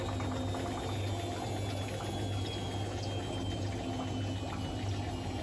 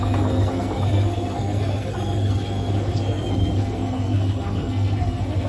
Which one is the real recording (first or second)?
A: first